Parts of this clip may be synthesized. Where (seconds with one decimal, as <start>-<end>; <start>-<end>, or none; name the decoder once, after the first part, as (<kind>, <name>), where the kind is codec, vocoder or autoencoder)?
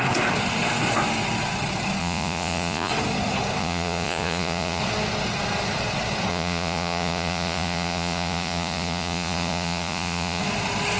2.0-2.9 (vocoder, Vocos); 3.6-4.8; 6.3-10.4